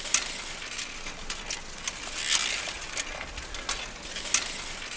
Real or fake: real